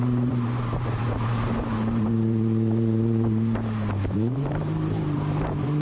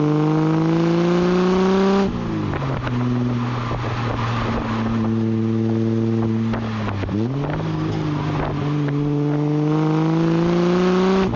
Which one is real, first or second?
second